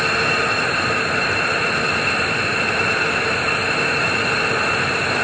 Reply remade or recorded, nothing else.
recorded